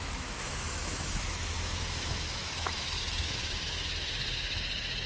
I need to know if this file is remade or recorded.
remade